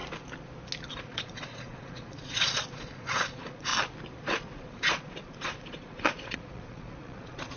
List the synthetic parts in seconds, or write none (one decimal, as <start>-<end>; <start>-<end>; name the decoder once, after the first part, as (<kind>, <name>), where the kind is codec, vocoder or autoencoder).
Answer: 0.9-3.7 (vocoder, Vocos); 4.2-7.6